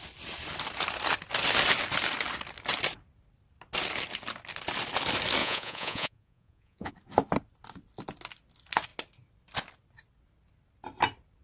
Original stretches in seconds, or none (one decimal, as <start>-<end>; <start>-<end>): 0.0-5.4; 6.9-11.4